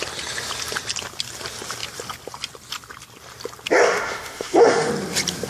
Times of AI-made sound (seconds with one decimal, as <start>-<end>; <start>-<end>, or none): 3.9-4.9